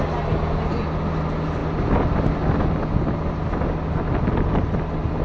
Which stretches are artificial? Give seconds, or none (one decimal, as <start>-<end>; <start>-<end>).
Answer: none